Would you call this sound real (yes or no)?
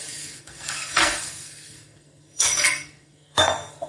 no